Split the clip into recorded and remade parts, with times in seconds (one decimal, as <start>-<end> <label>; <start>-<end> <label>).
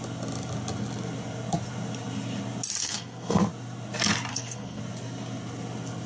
0.0-2.8 recorded; 2.8-3.4 remade; 3.4-4.3 recorded; 4.3-4.8 remade; 4.8-6.1 recorded